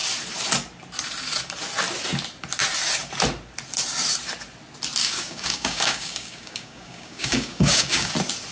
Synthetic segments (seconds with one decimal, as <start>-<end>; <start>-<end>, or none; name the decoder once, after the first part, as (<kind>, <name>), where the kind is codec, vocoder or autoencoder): 5.0-8.1 (codec, DAC)